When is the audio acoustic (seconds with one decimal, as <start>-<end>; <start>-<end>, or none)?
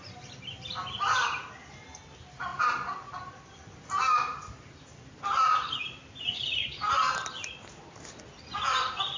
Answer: 0.0-9.2